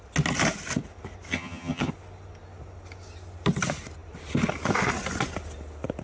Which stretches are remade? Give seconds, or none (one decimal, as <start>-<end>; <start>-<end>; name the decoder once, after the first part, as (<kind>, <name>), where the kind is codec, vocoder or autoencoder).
1.3-1.9 (vocoder, HiFi-GAN)